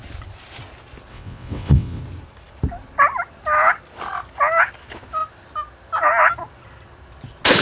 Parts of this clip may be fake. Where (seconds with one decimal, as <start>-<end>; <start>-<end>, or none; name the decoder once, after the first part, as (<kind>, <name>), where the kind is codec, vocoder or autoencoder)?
1.1-2.0 (vocoder, WaveNeXt)